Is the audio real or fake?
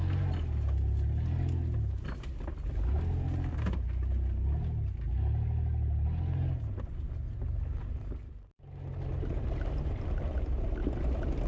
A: real